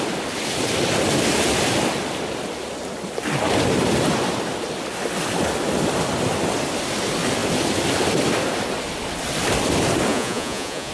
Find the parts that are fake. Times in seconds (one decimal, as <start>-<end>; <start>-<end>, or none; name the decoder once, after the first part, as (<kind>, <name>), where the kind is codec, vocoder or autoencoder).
10.1-10.9 (vocoder, Vocos)